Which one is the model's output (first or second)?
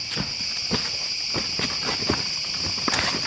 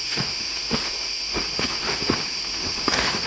second